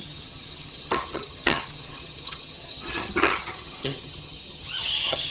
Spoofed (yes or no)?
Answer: yes